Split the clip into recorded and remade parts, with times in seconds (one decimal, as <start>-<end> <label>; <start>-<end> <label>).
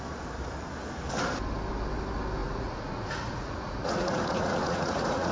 0.0-2.4 recorded; 2.4-5.3 remade